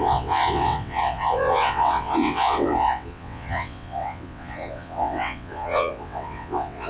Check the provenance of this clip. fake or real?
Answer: fake